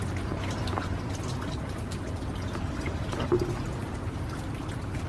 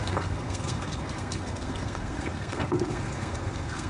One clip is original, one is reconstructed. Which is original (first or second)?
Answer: first